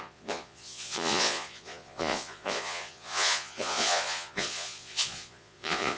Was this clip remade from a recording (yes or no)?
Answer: yes